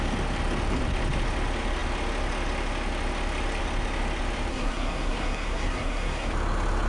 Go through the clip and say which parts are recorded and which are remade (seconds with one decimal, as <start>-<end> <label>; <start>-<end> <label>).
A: 0.0-4.5 recorded; 4.5-6.3 remade; 6.3-6.9 recorded